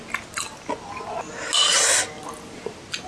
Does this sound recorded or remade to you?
recorded